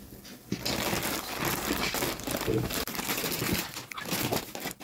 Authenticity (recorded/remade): recorded